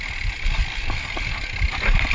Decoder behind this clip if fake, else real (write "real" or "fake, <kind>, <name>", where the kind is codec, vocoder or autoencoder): real